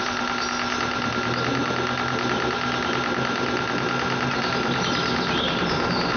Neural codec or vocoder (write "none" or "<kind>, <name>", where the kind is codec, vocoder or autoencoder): none